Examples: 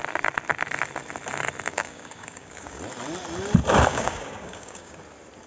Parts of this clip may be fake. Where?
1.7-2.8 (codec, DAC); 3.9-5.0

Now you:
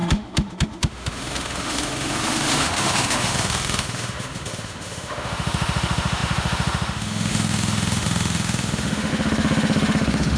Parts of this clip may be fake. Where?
0.0-10.4 (autoencoder, DAC-VAE)